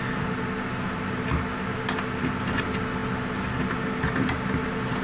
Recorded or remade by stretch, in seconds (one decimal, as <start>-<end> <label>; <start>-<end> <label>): 0.0-5.0 recorded